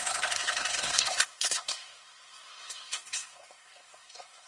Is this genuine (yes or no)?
no